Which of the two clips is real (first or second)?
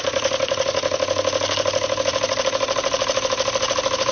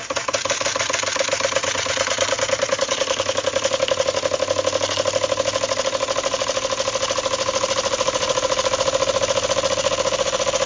second